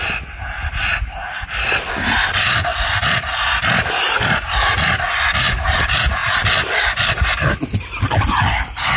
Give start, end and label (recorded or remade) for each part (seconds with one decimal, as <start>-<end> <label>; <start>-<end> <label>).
0.0-9.0 recorded